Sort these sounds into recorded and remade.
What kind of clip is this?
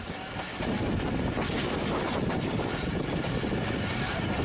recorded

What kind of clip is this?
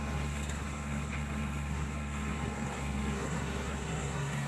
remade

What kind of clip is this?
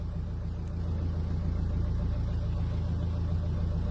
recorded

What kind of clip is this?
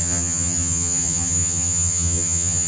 remade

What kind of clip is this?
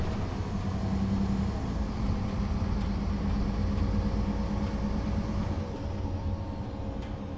recorded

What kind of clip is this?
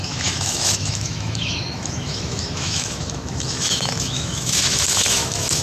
remade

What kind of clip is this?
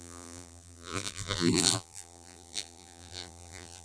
remade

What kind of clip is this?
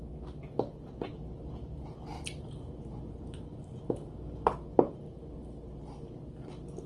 recorded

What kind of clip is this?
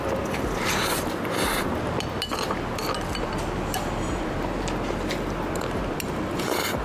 recorded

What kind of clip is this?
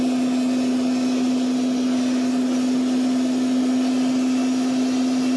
recorded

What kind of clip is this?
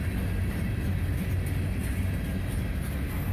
recorded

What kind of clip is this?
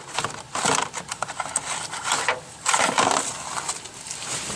recorded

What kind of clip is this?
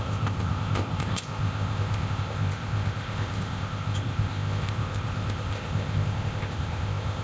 remade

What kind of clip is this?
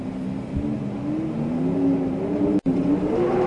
recorded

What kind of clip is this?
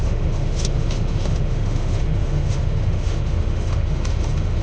remade